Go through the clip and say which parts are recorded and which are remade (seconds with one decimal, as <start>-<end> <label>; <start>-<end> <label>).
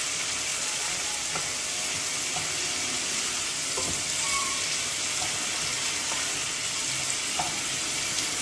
0.0-0.5 recorded; 0.5-1.1 remade; 1.1-8.4 recorded